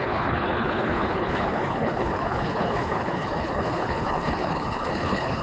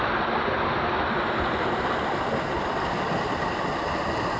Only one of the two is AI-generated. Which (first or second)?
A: first